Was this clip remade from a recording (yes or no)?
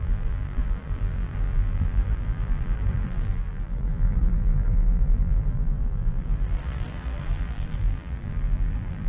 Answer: yes